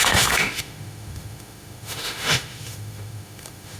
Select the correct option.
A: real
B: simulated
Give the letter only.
B